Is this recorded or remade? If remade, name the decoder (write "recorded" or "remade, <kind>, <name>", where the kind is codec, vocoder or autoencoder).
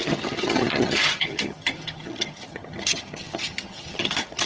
remade, vocoder, HiFi-GAN